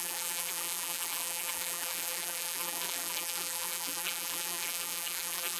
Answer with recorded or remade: remade